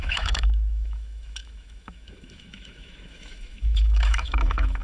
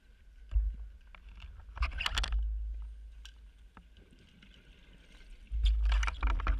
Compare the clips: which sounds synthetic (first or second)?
first